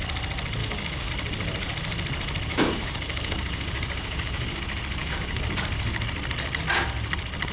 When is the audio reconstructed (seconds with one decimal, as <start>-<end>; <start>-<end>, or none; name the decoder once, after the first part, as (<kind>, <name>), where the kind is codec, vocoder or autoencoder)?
0.6-1.1 (codec, DAC); 2.5-4.6; 5.0-5.5